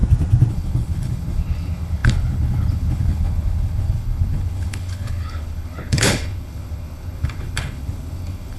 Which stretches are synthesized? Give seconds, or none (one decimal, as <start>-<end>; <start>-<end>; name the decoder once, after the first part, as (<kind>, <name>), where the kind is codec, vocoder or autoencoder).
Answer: 0.5-8.6 (codec, HILCodec)